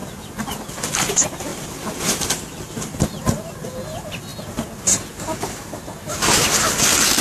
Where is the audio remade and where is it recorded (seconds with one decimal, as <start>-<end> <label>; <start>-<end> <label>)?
0.0-1.5 recorded; 1.5-3.0 remade; 3.0-7.2 recorded